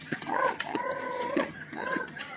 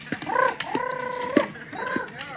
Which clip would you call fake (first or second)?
first